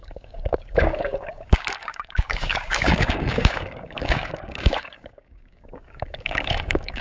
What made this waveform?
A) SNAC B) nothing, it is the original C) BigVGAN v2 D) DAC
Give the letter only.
D